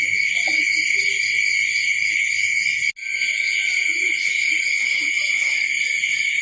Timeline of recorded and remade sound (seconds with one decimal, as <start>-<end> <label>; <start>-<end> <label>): 0.0-6.4 recorded